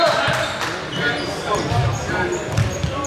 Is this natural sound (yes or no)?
yes